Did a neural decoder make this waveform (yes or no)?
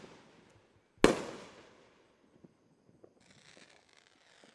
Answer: no